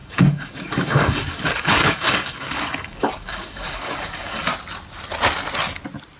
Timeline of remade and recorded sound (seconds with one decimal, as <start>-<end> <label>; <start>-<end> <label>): 0.0-4.5 remade; 4.5-6.2 recorded